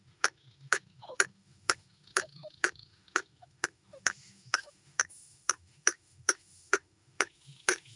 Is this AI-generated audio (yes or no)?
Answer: yes